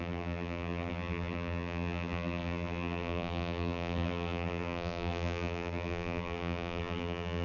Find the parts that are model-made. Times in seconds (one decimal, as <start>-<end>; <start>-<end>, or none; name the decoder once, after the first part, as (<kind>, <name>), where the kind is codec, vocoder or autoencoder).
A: 0.0-7.4 (vocoder, BigVGAN v2)